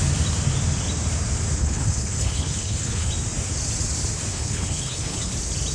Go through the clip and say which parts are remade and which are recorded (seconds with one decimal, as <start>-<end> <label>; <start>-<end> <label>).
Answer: 0.0-1.6 recorded; 1.6-3.1 remade; 3.1-4.3 recorded; 4.3-5.3 remade; 5.3-5.7 recorded